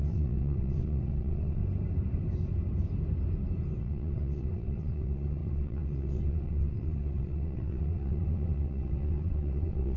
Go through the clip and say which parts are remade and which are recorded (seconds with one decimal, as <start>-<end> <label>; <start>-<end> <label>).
0.0-1.6 remade; 1.6-3.8 recorded; 3.8-10.0 remade